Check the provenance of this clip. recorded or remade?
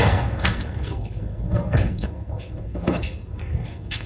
remade